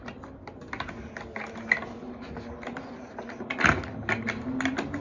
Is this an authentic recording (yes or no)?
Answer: yes